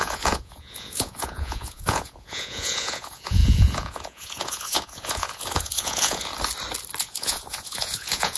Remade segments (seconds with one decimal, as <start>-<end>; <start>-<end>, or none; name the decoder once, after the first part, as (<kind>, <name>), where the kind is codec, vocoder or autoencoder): 0.0-6.3 (vocoder, Vocos); 7.0-8.4